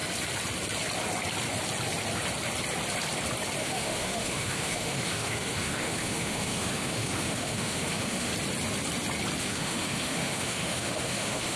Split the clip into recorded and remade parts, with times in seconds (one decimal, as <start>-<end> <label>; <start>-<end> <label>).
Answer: 0.0-3.6 recorded; 3.6-8.3 remade; 8.3-9.4 recorded; 9.4-11.6 remade